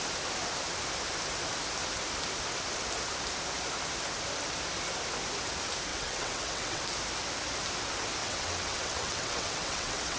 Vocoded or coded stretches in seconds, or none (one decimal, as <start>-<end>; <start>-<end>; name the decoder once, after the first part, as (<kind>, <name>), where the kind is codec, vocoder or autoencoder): 5.9-6.8 (vocoder, WaveNeXt); 8.2-10.2